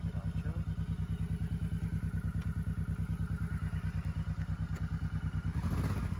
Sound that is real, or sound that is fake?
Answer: real